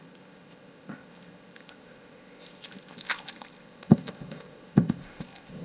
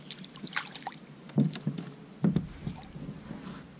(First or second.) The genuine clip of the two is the second